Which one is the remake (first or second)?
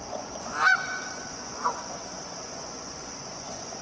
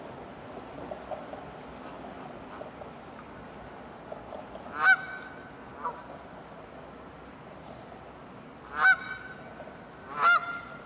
first